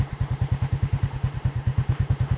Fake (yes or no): yes